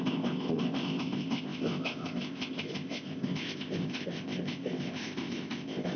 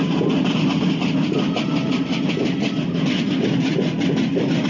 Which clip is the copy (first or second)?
first